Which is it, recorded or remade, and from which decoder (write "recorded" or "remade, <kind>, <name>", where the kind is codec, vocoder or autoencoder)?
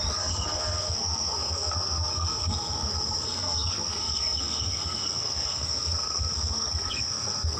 remade, codec, SNAC